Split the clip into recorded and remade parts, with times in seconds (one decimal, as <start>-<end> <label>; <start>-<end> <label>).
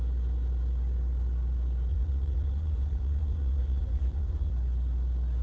0.0-1.9 recorded; 1.9-4.5 remade; 4.5-5.4 recorded